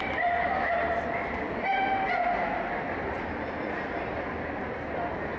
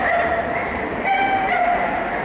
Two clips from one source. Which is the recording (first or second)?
first